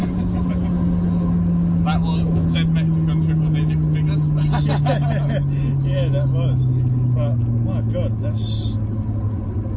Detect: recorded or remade recorded